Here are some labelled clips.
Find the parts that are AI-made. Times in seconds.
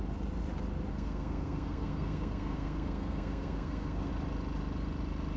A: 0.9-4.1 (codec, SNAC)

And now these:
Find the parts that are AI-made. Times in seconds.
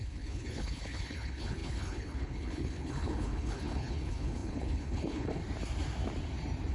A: 0.0-5.4 (codec, HILCodec)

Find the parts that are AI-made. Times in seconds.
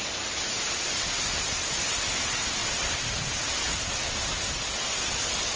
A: 2.6-3.1 (vocoder, BigVGAN v2)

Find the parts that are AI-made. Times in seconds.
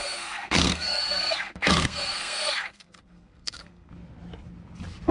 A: 0.0-3.9 (codec, SNAC)